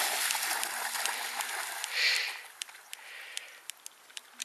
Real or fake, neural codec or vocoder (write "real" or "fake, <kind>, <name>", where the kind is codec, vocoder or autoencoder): real